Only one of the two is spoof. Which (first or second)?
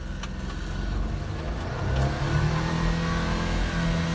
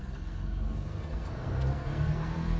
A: second